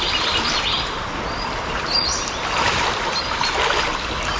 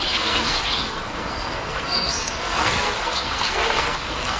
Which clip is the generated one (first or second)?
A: second